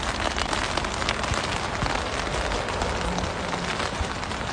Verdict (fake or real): real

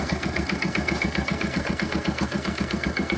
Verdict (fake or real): fake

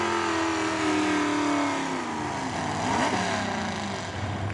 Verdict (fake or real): real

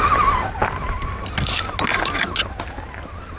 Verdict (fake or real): real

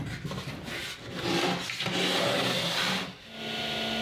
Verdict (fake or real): real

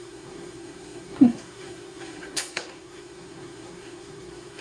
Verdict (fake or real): fake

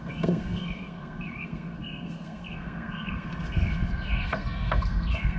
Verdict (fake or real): fake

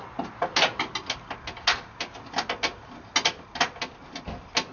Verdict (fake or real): real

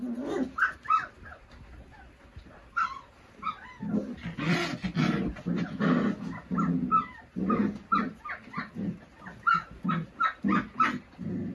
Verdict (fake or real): real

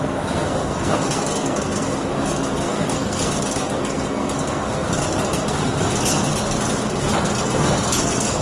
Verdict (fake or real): fake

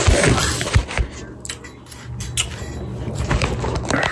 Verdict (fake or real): real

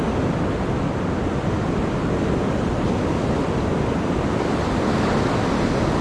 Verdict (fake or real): real